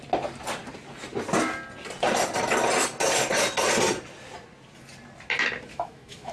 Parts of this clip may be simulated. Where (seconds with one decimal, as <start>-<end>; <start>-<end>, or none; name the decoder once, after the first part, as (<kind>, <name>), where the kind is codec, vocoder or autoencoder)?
5.7-6.3 (autoencoder, DAC-VAE)